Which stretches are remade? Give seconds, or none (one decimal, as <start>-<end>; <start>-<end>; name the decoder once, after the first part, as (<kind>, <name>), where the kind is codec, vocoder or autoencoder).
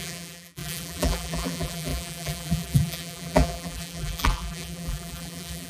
0.0-5.7 (vocoder, BigVGAN v2)